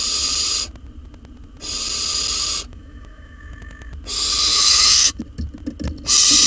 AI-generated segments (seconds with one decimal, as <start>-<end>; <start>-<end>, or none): 2.7-3.9; 4.5-5.2